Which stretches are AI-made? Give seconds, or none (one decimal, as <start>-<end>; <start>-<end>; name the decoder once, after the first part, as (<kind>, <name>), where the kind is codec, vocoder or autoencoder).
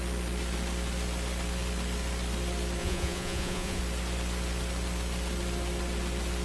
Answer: 2.8-3.8 (vocoder, Vocos)